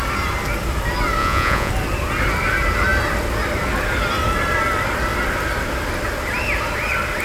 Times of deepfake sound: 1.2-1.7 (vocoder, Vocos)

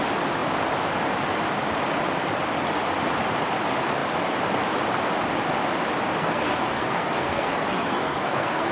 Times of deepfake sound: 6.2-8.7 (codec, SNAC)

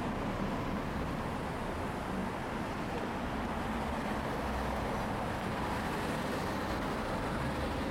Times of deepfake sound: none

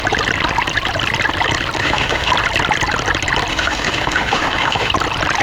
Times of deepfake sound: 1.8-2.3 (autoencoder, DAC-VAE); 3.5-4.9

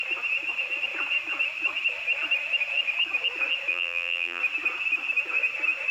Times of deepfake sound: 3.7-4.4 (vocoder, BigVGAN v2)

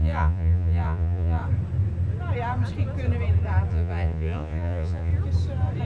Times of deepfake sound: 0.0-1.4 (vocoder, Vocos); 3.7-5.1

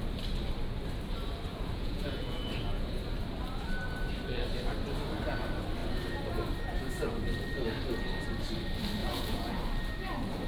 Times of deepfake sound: 1.5-3.0 (vocoder, Vocos); 9.0-9.6

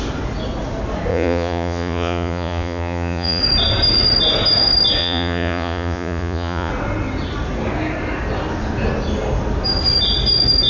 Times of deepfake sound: 1.1-3.4 (vocoder, Vocos); 5.0-6.7